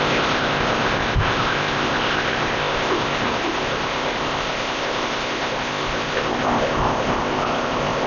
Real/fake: fake